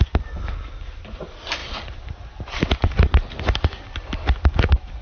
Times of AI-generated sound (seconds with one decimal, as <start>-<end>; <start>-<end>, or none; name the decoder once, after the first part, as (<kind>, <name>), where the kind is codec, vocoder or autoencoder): none